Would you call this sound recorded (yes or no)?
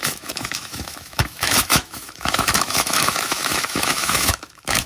no